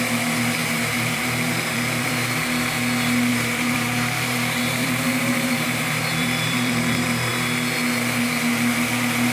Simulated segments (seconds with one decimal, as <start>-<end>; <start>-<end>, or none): 0.6-2.1; 3.3-7.3